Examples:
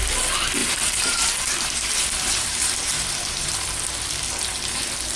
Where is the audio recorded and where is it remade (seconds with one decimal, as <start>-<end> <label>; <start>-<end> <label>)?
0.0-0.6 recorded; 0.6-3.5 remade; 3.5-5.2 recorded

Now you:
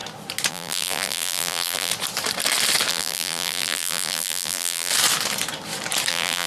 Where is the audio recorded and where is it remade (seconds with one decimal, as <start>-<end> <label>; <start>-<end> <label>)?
0.0-0.5 recorded; 0.5-1.9 remade; 1.9-2.9 recorded; 2.9-4.9 remade; 4.9-6.1 recorded; 6.1-6.5 remade

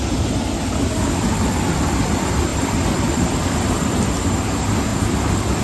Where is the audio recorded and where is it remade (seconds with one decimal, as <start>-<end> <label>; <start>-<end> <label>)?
0.0-2.5 recorded; 2.5-4.1 remade; 4.1-5.6 recorded

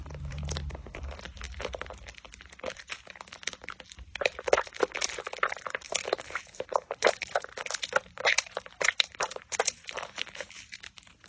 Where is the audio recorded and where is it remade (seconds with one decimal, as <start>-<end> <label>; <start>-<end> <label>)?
0.0-2.9 remade; 2.9-4.1 recorded; 4.1-11.3 remade

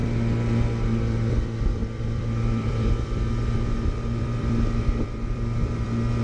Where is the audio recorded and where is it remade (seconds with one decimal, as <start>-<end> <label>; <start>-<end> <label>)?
0.0-1.3 recorded; 1.3-6.2 remade

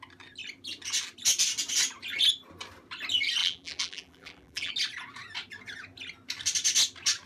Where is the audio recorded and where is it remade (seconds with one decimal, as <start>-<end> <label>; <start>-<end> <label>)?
0.0-3.4 recorded; 3.4-4.7 remade; 4.7-7.3 recorded